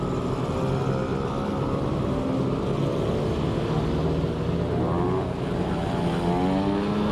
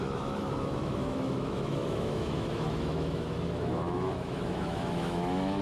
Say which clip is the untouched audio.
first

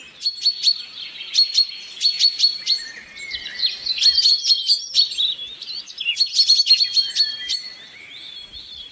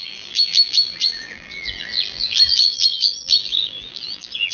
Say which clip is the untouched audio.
first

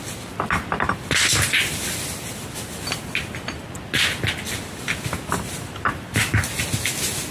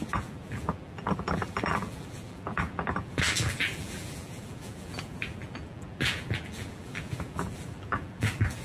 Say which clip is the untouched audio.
first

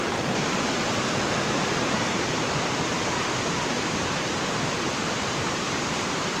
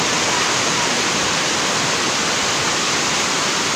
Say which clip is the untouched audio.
second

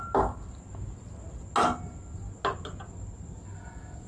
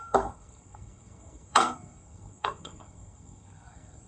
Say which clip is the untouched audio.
first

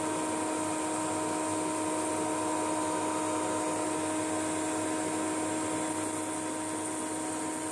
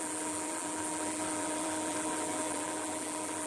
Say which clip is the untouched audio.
first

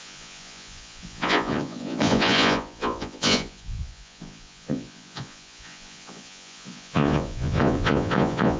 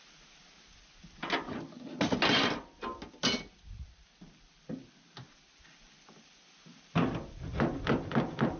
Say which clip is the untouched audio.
second